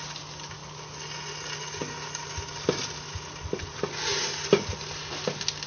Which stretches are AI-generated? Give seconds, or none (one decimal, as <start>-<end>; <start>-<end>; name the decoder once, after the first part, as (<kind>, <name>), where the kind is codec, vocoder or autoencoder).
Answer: none